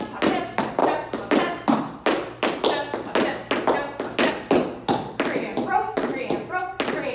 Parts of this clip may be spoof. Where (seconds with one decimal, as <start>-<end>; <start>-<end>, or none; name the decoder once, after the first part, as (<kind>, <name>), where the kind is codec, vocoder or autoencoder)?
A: 5.5-6.1 (vocoder, Vocos)